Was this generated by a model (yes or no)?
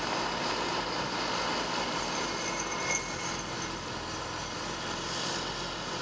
no